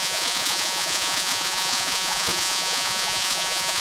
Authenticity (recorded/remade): remade